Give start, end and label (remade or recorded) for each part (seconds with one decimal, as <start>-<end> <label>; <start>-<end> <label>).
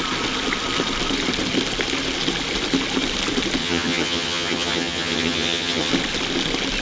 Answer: 0.0-3.6 recorded; 3.6-5.9 remade; 5.9-6.8 recorded